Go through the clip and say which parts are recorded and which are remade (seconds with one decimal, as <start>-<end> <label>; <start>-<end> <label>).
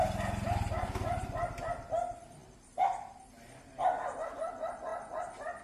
0.0-5.6 recorded